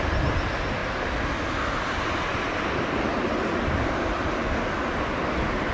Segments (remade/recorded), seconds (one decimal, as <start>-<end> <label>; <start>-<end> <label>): 0.0-5.7 recorded